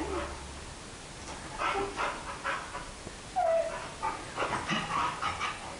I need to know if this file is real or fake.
real